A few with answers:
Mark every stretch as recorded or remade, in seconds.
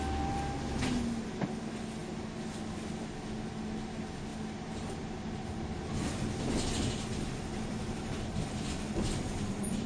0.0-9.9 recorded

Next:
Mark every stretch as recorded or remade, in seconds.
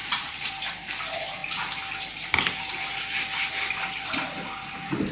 0.0-0.5 remade; 0.5-5.1 recorded